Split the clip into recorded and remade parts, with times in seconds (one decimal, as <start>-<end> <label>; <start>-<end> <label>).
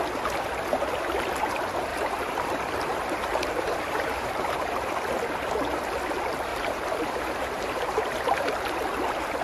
0.0-1.9 recorded; 1.9-4.9 remade; 4.9-6.5 recorded; 6.5-8.0 remade; 8.0-9.4 recorded